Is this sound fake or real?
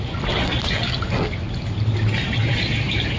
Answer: real